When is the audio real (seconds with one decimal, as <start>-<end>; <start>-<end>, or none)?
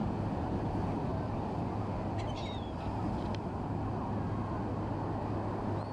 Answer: 0.0-1.1; 3.6-5.9